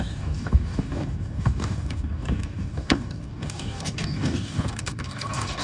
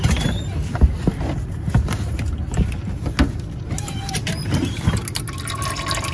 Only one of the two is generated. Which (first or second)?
first